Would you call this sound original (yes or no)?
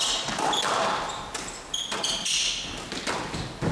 yes